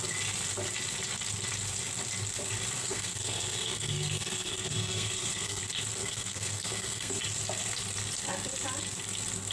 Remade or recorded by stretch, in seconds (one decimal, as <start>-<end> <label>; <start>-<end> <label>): 0.0-2.8 recorded; 2.8-5.6 remade; 5.6-6.0 recorded; 6.0-7.2 remade; 7.2-9.5 recorded